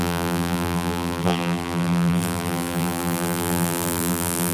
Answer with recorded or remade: remade